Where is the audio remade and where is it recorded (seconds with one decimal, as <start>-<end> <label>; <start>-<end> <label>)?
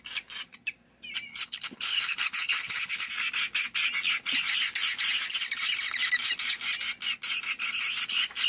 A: 0.0-1.3 recorded; 1.3-3.1 remade; 3.1-8.5 recorded